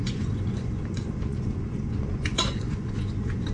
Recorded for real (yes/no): no